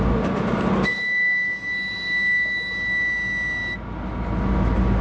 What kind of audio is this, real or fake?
real